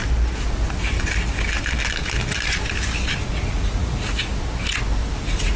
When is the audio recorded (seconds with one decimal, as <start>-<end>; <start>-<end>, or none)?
0.0-3.4; 4.3-5.0